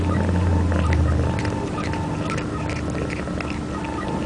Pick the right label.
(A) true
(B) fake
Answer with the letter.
A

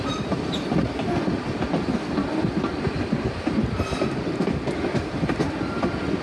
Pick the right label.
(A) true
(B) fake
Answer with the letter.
A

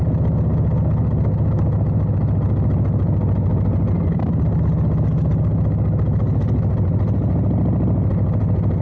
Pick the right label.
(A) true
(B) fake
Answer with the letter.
A